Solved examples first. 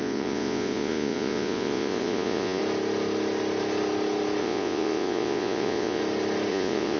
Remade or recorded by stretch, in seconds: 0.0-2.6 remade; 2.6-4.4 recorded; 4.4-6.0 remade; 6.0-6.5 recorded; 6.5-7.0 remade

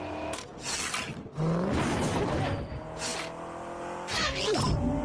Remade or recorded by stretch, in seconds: 0.0-5.0 recorded

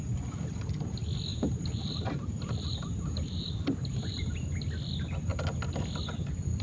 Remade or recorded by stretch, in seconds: 0.0-1.3 recorded; 1.3-4.3 remade; 4.3-6.6 recorded

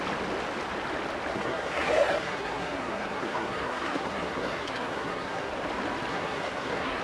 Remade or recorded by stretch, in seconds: 0.0-1.3 recorded; 1.3-5.5 remade; 5.5-6.1 recorded; 6.1-7.0 remade

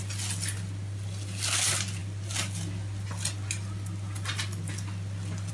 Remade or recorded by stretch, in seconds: 0.0-5.5 recorded

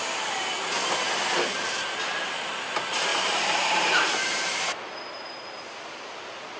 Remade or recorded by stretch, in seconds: 0.0-3.1 recorded; 3.1-4.7 remade; 4.7-6.6 recorded

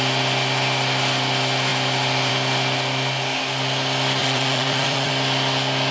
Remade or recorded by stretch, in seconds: 0.0-4.2 recorded; 4.2-5.1 remade; 5.1-5.9 recorded

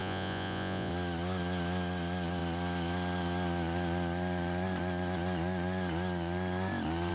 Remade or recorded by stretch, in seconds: 0.0-0.9 remade; 0.9-7.1 recorded